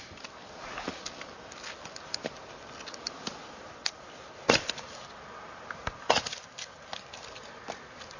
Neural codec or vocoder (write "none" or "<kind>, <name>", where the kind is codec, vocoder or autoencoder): none